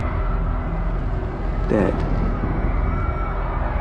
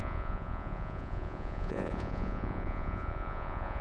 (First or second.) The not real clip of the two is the second